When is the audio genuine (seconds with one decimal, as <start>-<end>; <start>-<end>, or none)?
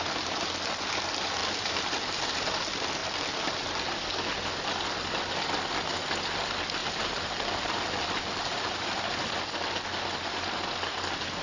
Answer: 0.0-1.4; 2.4-6.8; 9.2-11.4